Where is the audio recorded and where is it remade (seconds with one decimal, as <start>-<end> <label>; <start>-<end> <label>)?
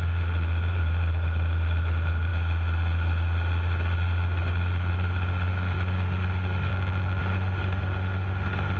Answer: 0.0-6.7 remade; 6.7-7.2 recorded; 7.2-8.8 remade